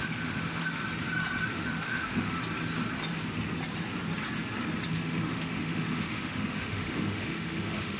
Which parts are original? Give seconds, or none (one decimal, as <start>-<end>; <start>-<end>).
0.8-1.5; 2.4-4.9